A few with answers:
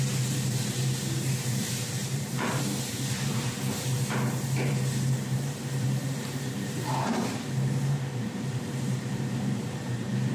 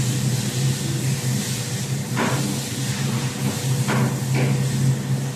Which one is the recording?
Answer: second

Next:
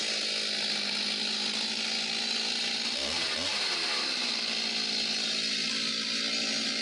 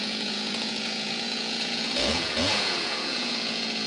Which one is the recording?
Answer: first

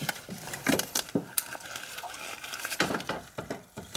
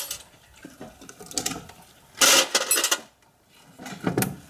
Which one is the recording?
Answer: second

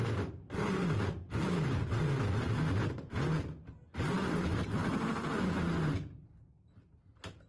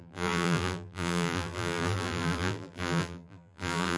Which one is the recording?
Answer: first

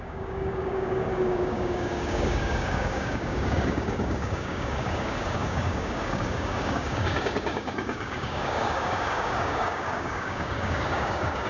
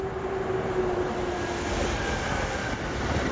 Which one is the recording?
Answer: second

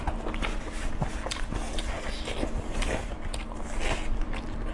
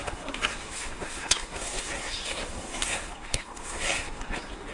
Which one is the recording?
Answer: first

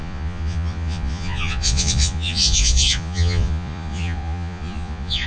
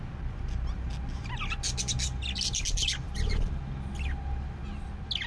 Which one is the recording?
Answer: second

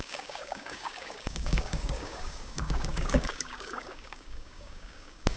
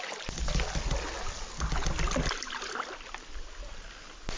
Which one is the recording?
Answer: second